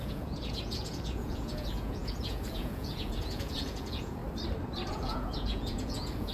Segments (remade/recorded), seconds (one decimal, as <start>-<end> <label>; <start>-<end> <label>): 0.0-4.2 remade; 4.2-4.9 recorded; 4.9-6.3 remade